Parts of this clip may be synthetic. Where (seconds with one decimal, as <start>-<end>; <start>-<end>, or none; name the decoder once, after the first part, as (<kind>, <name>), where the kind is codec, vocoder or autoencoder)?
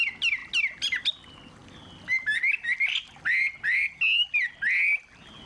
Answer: none